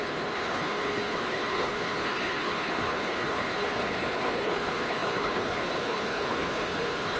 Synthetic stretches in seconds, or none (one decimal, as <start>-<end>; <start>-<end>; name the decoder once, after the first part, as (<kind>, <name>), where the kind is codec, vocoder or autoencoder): 0.0-7.2 (codec, HILCodec)